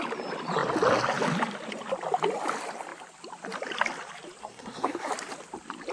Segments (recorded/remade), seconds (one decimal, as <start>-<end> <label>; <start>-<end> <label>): 0.0-4.4 recorded; 4.4-5.1 remade; 5.1-5.9 recorded